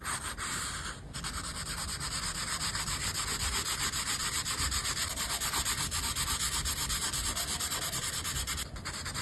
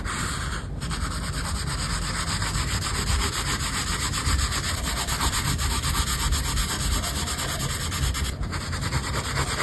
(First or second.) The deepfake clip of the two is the first